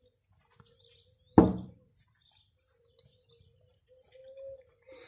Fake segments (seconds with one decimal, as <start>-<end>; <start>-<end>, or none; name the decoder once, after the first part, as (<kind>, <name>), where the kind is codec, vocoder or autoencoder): 1.5-3.9 (vocoder, BigVGAN v2)